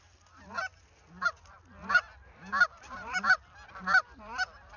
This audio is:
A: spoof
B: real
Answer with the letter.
B